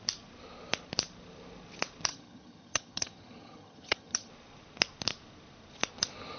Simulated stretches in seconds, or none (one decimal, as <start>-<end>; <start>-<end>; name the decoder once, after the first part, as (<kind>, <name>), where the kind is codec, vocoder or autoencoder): 2.1-4.3 (vocoder, HiFi-GAN)